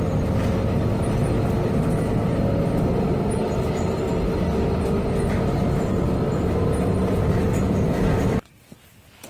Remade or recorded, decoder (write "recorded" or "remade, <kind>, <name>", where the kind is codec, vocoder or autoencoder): recorded